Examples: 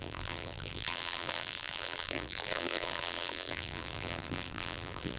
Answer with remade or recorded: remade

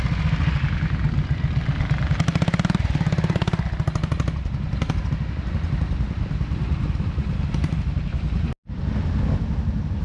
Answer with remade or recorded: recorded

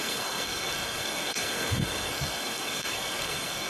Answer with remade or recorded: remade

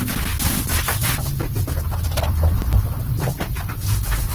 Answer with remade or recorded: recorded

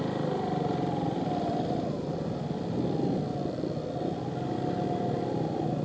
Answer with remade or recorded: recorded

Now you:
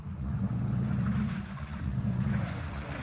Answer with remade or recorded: remade